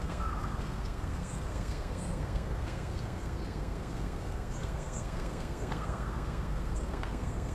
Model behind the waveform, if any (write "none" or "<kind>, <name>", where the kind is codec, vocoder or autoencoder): codec, SNAC